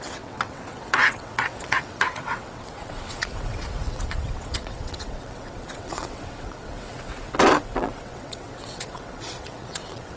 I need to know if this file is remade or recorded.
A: remade